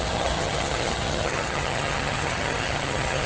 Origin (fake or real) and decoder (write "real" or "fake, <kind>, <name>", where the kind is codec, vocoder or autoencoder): fake, vocoder, HiFi-GAN